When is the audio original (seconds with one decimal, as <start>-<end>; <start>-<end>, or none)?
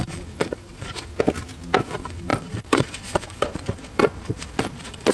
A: 1.1-1.8